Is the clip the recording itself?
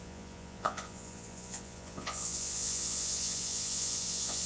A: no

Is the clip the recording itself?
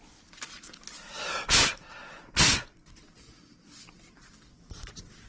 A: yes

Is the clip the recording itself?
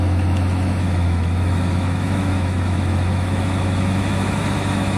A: no